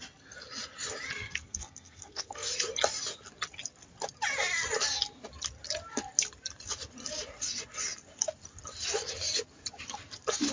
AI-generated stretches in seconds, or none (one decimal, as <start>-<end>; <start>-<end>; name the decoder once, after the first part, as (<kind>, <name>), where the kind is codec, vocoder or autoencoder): 1.1-2.5 (codec, SNAC)